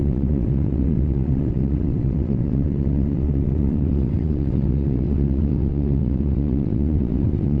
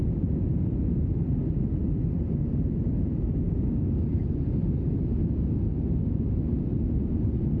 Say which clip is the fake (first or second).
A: first